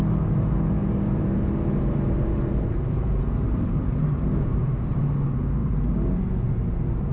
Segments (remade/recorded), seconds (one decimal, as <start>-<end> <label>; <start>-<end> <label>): 0.0-0.8 recorded; 0.8-5.0 remade; 5.0-5.6 recorded; 5.6-6.2 remade; 6.2-7.1 recorded